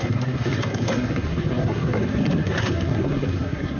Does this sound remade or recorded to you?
remade